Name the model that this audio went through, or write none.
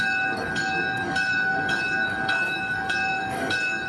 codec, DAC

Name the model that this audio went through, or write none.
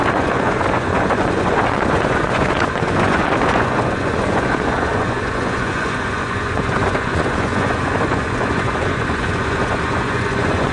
vocoder, Vocos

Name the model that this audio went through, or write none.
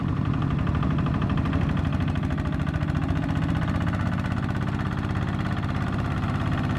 none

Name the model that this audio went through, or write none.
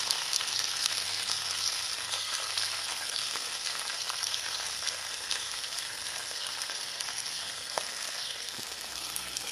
codec, SNAC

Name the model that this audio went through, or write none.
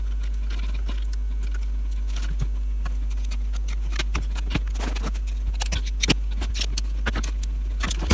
none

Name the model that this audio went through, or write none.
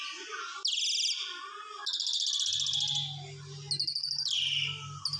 none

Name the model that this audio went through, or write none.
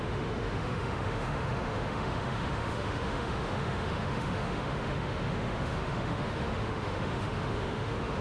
autoencoder, DAC-VAE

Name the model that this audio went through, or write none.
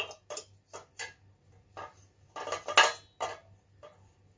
none